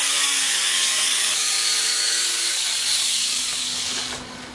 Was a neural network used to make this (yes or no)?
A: yes